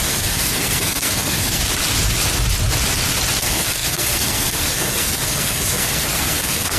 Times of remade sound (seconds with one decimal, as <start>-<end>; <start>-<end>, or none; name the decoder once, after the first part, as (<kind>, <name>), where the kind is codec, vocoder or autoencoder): 0.0-1.6 (codec, SNAC); 3.4-6.8